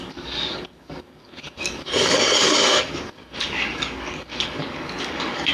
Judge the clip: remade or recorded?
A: remade